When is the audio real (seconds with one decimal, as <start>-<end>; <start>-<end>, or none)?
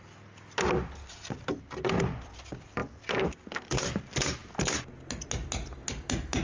0.0-6.4